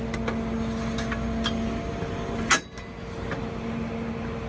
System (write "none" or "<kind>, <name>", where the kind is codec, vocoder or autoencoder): none